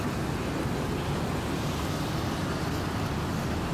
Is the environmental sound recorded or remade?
recorded